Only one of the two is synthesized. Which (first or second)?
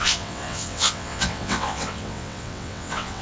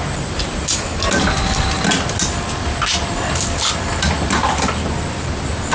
first